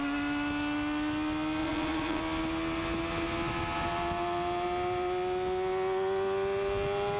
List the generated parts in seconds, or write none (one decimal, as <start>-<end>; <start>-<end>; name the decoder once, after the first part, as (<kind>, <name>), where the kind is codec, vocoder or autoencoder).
1.6-2.2 (vocoder, Vocos)